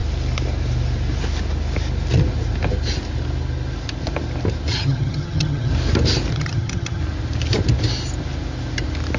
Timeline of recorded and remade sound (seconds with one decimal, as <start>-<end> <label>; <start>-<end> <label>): 0.0-4.7 recorded; 4.7-5.7 remade; 5.7-6.3 recorded; 6.3-7.0 remade; 7.0-9.2 recorded